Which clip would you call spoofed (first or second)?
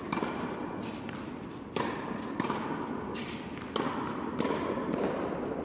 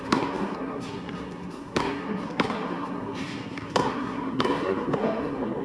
second